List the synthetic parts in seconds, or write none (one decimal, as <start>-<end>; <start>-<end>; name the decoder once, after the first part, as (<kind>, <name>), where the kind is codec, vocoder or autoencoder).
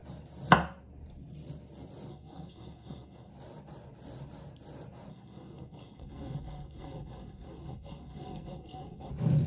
2.1-3.3 (codec, SNAC); 5.1-9.1